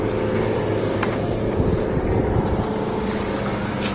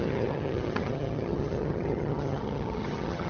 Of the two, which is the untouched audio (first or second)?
first